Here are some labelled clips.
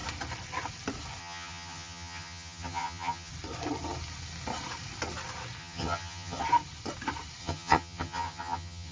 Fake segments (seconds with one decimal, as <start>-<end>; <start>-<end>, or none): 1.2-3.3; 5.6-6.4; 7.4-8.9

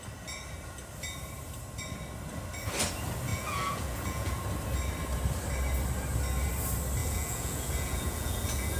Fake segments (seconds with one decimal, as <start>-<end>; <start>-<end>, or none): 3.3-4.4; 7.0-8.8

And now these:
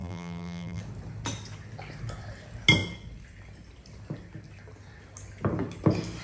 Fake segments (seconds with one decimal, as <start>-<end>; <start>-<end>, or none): 0.0-0.8